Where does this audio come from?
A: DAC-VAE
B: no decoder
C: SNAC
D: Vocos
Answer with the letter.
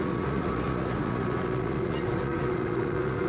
D